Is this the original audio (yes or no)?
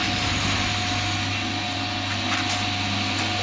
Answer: yes